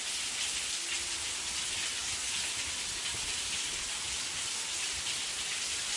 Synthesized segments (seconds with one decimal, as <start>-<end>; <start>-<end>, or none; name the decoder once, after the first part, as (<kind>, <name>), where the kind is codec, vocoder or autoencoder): none